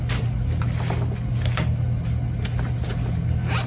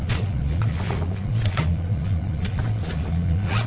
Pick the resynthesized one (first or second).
second